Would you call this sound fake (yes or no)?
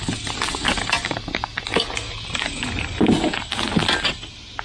no